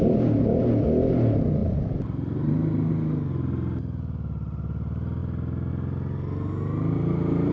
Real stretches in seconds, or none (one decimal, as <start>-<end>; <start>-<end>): 0.0-1.6; 2.9-7.5